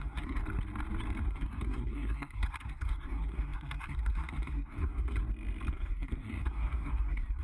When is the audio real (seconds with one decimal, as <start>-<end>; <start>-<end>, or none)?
0.4-1.2; 5.2-5.7